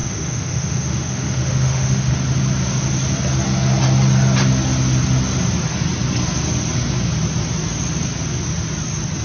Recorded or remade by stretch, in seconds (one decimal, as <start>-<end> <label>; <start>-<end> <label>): 0.0-2.1 remade; 2.1-9.2 recorded